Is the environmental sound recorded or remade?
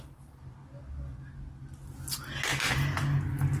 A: recorded